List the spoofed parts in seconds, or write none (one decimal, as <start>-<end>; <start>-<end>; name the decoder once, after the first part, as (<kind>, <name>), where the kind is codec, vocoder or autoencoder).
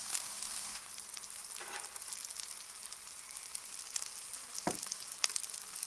0.0-0.9 (codec, DAC)